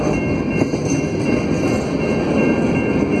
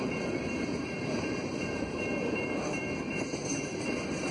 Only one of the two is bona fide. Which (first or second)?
first